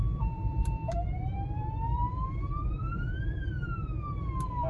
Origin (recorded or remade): remade